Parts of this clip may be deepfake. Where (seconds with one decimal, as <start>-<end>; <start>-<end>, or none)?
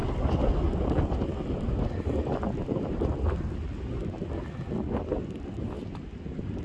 none